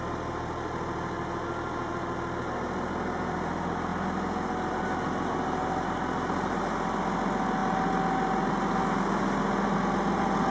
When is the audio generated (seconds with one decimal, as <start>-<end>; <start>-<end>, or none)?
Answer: none